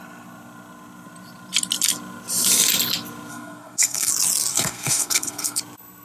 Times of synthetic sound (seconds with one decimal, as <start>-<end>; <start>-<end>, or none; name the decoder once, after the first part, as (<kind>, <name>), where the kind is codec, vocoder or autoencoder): 3.3-4.1 (codec, SNAC); 4.5-5.6